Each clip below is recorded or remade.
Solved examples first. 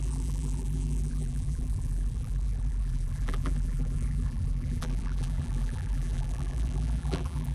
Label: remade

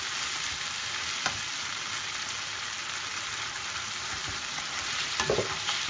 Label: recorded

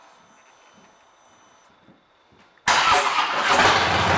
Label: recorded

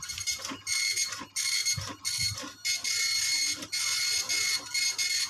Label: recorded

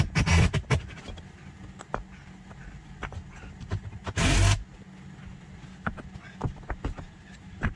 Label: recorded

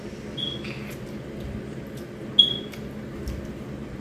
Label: recorded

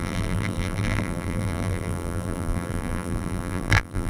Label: remade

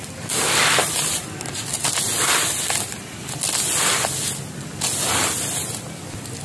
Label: recorded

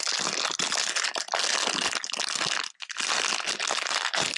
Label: recorded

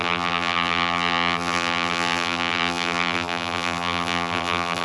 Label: remade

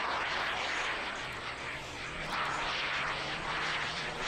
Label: recorded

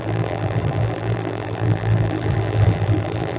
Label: remade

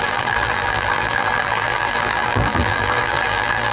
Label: remade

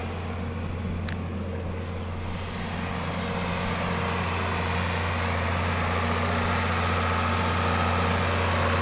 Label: recorded